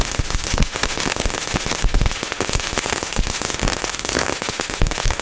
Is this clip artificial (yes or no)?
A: yes